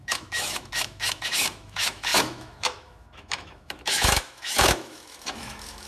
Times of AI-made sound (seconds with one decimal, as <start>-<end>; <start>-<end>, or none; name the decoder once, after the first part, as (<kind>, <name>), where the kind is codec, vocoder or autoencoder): 0.0-5.9 (autoencoder, DAC-VAE)